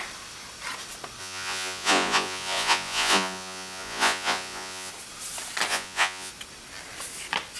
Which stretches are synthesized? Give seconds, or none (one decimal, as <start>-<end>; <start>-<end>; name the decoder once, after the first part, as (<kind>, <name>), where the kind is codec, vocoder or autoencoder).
1.2-4.9 (vocoder, Vocos); 5.7-6.3